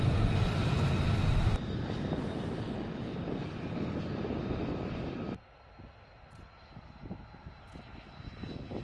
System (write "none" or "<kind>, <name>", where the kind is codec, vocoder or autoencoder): none